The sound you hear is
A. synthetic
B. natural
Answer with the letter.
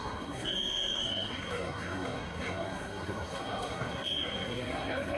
A